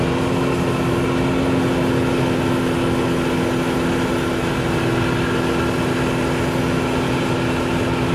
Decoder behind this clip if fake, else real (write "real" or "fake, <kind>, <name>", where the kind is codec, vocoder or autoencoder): real